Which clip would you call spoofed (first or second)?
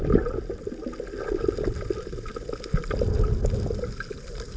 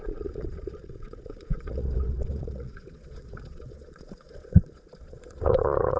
second